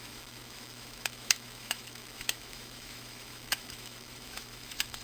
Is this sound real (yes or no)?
no